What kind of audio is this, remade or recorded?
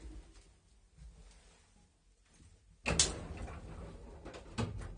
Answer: recorded